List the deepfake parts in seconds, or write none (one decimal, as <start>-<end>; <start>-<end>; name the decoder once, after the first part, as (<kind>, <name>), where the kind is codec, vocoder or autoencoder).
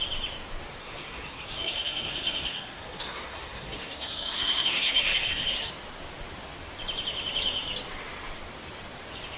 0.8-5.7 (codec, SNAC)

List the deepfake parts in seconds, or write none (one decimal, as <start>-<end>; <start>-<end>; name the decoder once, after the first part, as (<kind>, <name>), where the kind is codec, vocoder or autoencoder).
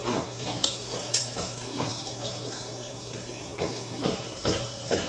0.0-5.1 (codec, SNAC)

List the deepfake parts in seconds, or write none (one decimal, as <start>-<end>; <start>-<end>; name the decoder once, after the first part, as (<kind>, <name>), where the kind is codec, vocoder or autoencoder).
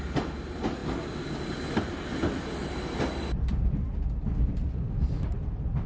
none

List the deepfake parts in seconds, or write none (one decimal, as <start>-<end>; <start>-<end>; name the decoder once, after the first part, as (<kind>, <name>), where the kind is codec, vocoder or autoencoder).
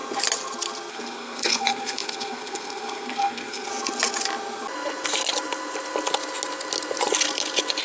0.9-3.7 (codec, SNAC)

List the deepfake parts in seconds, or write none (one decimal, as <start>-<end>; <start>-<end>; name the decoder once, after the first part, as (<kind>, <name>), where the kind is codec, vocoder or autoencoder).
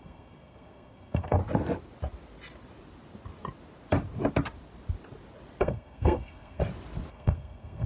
0.0-1.4 (codec, SNAC); 5.6-6.6; 7.1-7.9